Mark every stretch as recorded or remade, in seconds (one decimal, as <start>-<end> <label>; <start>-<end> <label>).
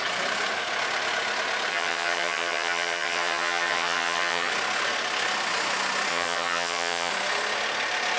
0.0-1.7 recorded; 1.7-4.5 remade; 4.5-6.1 recorded; 6.1-7.1 remade; 7.1-8.2 recorded